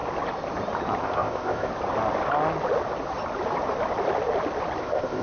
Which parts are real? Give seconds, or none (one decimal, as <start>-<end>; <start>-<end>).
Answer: 0.0-1.0; 1.7-4.8